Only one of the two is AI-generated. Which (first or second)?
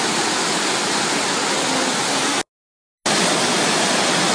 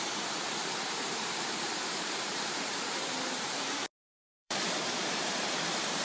second